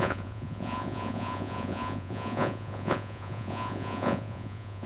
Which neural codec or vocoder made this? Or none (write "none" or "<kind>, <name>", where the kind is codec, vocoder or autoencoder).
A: vocoder, Vocos